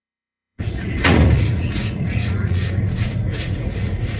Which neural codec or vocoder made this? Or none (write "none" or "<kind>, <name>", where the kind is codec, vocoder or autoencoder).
vocoder, Vocos